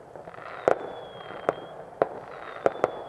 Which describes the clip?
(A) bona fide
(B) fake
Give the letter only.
A